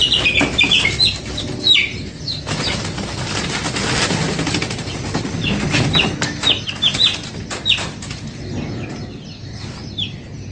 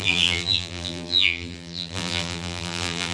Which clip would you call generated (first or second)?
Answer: second